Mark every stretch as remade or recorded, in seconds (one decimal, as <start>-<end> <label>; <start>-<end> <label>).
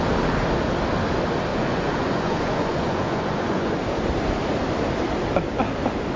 0.0-1.5 recorded; 1.5-3.8 remade; 3.8-6.2 recorded